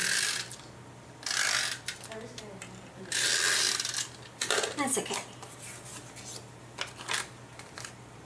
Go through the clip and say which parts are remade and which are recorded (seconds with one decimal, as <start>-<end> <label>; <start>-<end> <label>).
0.0-8.3 recorded